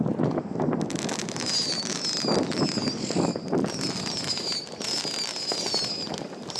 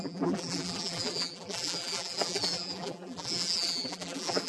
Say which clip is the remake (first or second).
second